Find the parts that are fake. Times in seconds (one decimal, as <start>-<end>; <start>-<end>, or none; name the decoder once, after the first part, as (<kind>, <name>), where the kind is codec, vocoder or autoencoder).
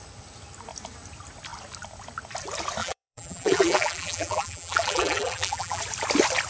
2.8-5.8 (vocoder, BigVGAN v2)